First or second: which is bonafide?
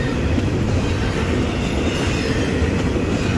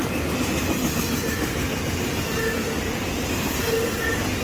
second